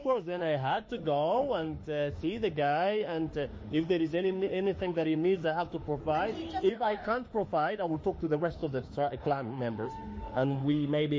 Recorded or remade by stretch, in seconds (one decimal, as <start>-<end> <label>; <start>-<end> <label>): 0.0-6.0 remade; 6.0-6.7 recorded; 6.7-11.2 remade